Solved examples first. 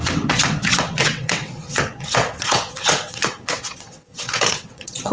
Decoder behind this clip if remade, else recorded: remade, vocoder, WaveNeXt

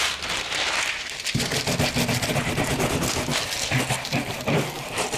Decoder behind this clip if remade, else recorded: recorded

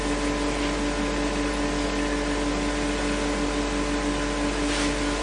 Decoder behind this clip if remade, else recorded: recorded